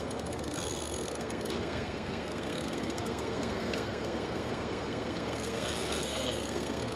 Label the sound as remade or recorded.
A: remade